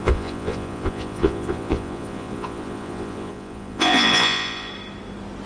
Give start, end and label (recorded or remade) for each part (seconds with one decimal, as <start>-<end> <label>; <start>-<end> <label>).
0.0-4.7 remade; 4.7-5.5 recorded